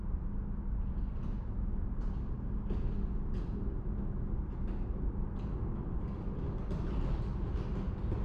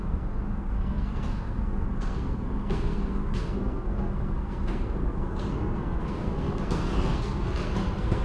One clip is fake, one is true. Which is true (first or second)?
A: first